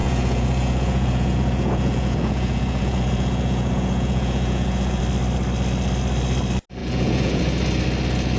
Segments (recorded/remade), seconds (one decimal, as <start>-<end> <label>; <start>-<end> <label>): 0.0-5.0 remade; 5.0-6.8 recorded; 6.8-7.4 remade; 7.4-8.4 recorded